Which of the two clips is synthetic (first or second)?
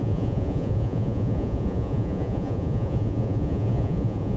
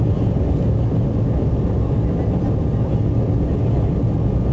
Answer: first